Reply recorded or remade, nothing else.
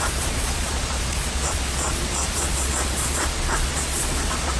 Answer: remade